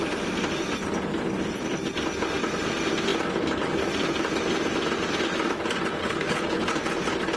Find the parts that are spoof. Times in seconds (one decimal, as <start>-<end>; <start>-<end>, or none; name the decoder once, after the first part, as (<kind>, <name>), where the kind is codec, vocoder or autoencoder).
6.0-6.7 (codec, HILCodec)